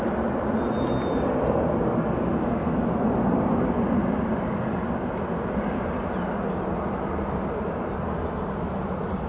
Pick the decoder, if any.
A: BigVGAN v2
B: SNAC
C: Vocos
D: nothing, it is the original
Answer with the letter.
D